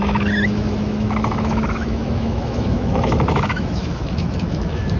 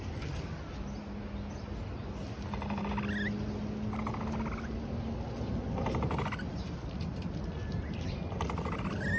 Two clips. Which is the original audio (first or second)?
second